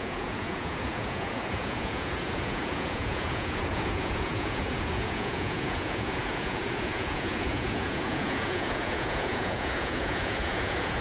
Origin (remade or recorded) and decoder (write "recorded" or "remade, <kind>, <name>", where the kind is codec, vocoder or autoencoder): remade, vocoder, Vocos